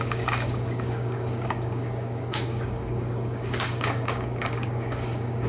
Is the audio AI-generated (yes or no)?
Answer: yes